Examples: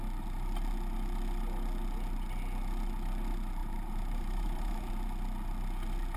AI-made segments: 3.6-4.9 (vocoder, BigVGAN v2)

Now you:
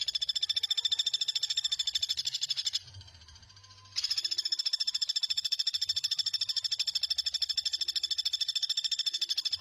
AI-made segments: 4.8-6.1 (vocoder, BigVGAN v2)